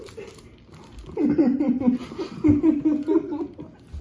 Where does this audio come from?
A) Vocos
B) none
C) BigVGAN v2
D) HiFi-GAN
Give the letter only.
B